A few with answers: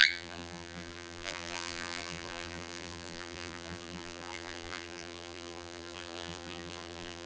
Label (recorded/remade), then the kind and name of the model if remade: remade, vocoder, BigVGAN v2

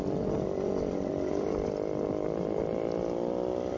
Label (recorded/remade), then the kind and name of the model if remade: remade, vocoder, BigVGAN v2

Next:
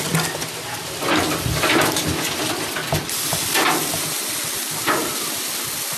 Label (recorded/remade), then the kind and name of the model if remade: recorded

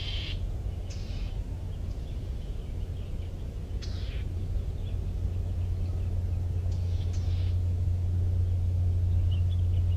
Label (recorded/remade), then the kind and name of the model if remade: recorded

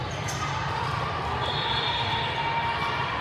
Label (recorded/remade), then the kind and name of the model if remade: remade, vocoder, BigVGAN v2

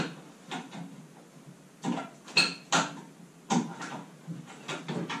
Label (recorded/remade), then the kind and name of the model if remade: recorded